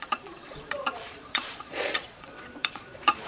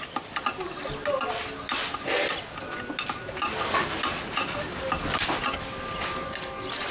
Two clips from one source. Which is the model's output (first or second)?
first